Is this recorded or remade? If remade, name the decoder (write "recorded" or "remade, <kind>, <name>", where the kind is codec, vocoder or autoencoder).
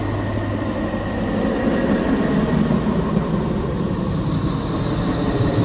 recorded